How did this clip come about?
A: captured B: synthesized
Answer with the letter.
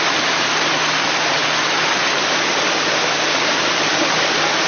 A